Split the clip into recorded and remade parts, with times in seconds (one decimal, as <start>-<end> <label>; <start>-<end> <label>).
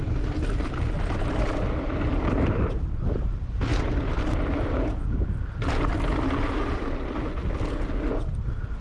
0.0-2.1 recorded; 2.1-2.8 remade; 2.8-3.7 recorded; 3.7-4.2 remade; 4.2-5.0 recorded; 5.0-5.9 remade; 5.9-8.8 recorded